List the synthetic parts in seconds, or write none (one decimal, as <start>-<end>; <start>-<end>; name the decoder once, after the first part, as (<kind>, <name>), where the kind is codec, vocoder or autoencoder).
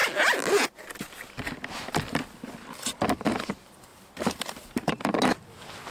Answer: 3.9-4.9 (vocoder, BigVGAN v2)